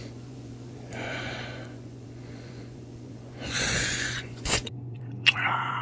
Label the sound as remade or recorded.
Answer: remade